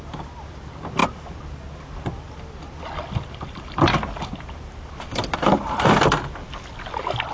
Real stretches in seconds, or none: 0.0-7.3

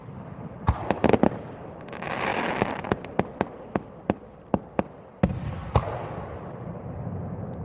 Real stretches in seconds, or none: 0.0-7.6

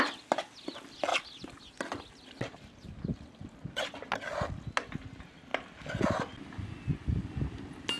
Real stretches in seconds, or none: 0.0-8.0

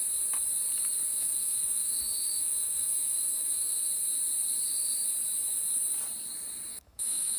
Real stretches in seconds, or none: 0.0-1.1; 3.9-6.7